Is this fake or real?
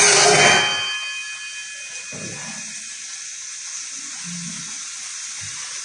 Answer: real